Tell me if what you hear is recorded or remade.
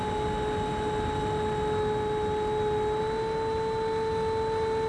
recorded